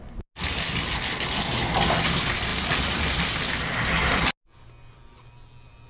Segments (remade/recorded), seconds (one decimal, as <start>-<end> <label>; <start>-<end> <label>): 0.0-5.9 recorded